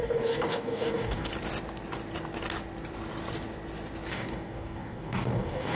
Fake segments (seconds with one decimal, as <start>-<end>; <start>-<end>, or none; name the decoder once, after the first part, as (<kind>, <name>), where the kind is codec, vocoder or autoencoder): 0.0-1.3 (codec, DAC); 4.1-5.7

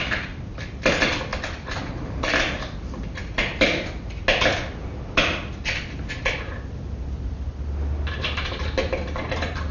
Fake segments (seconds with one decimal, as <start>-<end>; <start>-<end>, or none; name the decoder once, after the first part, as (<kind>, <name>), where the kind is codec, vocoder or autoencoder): none

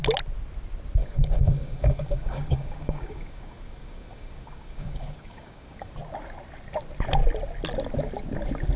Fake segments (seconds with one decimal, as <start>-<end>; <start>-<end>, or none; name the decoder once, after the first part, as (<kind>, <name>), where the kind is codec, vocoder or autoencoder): 1.0-5.9 (codec, DAC)

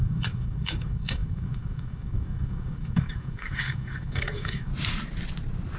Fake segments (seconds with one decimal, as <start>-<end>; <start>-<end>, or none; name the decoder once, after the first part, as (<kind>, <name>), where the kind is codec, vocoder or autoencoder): 0.0-4.7 (codec, DAC)

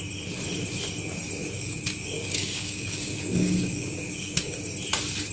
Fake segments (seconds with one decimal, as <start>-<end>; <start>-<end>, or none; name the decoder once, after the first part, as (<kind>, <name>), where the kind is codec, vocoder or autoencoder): 1.4-4.6 (codec, DAC)